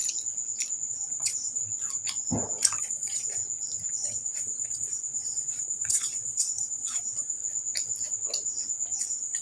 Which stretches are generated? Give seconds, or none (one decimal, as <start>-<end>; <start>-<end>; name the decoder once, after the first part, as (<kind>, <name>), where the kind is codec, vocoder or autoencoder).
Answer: 0.9-1.6 (vocoder, Vocos); 2.8-3.4; 3.9-7.4; 9.0-9.4